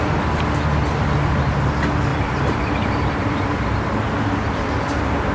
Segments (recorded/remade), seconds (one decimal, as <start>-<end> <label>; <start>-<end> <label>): 0.0-2.1 recorded; 2.1-3.7 remade; 3.7-5.3 recorded